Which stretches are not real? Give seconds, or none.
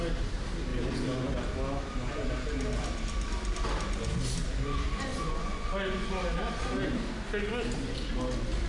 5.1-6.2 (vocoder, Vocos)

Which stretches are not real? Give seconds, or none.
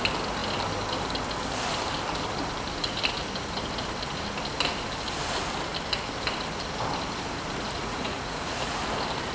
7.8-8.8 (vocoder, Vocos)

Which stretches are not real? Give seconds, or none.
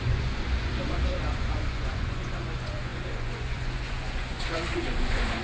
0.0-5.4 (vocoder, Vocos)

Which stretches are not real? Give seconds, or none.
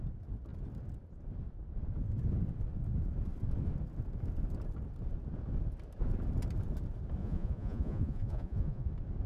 7.2-8.9 (vocoder, Vocos)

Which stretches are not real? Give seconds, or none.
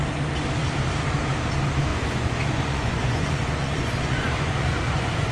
1.9-5.3 (vocoder, Vocos)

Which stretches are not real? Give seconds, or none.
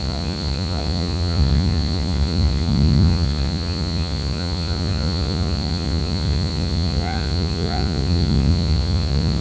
0.0-9.4 (vocoder, Vocos)